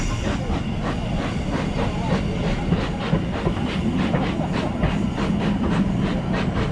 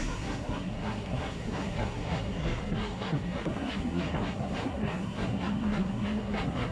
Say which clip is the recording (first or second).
first